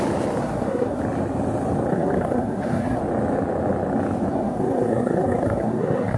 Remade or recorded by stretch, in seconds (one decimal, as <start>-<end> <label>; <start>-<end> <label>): 0.0-0.4 recorded; 0.4-1.0 remade; 1.0-1.9 recorded; 1.9-3.0 remade; 3.0-4.3 recorded; 4.3-6.2 remade